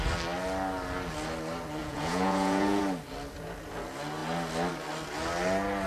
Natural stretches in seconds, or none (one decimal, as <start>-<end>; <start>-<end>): 0.0-1.8; 2.8-5.9